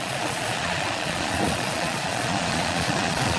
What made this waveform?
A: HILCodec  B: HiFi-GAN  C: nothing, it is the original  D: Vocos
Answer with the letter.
D